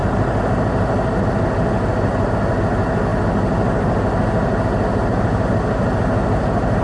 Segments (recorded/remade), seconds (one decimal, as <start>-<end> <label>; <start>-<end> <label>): 0.0-6.8 recorded

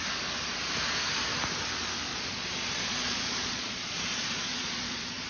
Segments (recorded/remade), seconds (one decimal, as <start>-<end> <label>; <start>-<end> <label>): 0.0-2.1 recorded; 2.1-5.3 remade

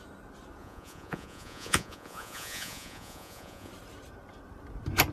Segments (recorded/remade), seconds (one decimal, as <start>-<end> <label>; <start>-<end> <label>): 0.0-0.6 recorded; 0.6-3.7 remade; 3.7-5.1 recorded